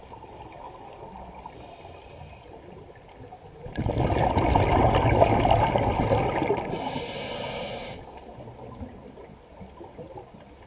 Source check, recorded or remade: recorded